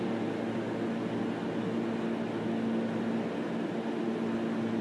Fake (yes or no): no